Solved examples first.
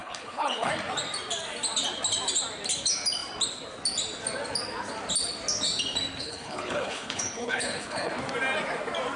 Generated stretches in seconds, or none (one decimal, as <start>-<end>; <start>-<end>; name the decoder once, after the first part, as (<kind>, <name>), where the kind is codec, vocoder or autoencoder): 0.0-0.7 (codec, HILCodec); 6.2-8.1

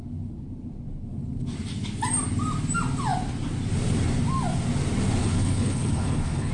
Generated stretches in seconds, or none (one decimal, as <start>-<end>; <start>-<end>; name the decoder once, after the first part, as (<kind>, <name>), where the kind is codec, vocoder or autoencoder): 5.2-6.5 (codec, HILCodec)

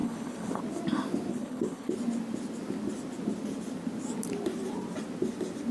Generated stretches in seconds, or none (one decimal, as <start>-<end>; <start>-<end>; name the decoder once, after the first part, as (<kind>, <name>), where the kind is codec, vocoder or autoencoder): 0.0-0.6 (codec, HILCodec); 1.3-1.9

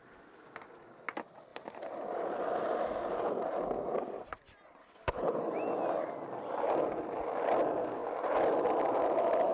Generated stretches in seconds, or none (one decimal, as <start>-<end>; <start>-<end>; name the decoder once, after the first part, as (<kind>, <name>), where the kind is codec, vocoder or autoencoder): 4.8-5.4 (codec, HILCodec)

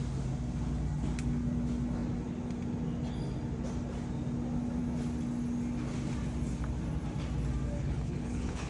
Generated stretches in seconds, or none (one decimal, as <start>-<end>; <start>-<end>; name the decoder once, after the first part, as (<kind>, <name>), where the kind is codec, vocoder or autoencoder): 7.8-8.7 (codec, HILCodec)